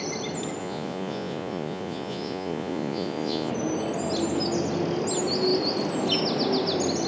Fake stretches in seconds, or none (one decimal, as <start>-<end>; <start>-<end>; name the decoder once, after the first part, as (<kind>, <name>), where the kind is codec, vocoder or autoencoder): 0.6-3.5 (vocoder, Vocos)